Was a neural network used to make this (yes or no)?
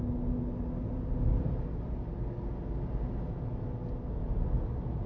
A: no